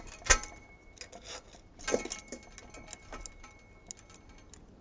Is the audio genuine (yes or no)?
yes